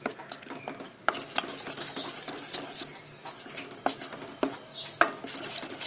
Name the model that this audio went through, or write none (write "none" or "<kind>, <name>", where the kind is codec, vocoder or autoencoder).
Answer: none